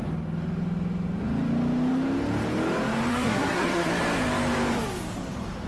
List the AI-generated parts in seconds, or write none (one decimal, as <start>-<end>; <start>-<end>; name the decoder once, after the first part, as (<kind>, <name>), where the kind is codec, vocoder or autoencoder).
3.1-3.9 (codec, SNAC)